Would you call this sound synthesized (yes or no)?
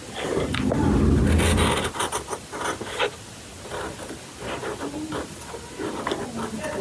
no